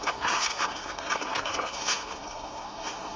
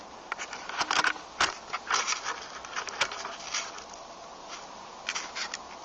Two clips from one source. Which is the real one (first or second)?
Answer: second